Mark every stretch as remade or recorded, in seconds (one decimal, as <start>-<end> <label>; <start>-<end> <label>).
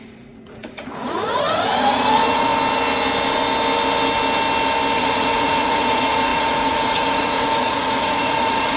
0.0-2.5 remade; 2.5-5.0 recorded; 5.0-8.8 remade